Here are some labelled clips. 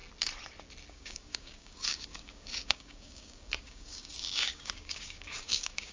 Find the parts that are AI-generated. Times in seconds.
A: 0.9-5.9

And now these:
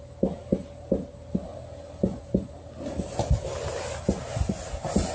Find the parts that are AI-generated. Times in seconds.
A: none